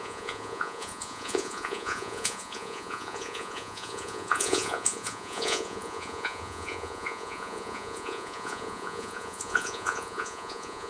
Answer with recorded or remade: remade